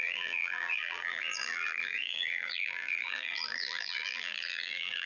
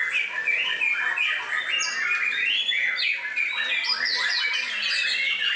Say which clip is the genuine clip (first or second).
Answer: second